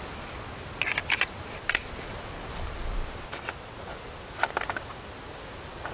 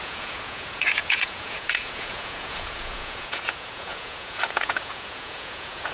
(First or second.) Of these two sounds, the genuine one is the first